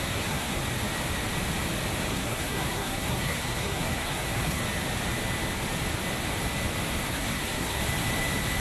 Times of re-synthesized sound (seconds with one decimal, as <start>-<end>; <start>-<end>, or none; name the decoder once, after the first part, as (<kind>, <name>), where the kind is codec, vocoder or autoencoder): 0.0-0.6 (codec, SNAC); 2.1-4.6; 7.1-7.8